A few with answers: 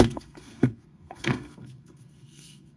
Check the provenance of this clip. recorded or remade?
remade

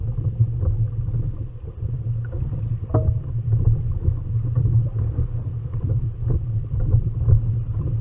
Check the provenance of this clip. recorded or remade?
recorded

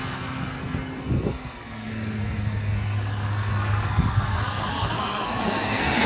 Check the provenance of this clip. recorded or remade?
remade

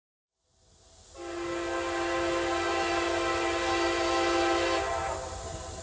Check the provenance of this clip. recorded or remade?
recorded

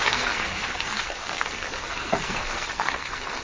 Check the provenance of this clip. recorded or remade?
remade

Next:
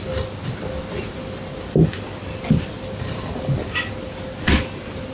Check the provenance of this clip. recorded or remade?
recorded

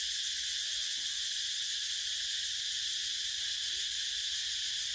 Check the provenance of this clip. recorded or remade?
recorded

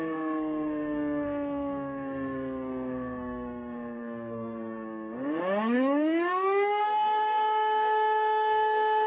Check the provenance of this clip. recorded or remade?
remade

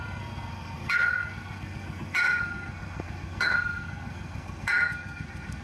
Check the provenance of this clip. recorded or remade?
remade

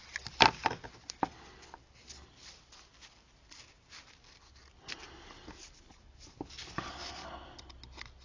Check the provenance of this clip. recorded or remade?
recorded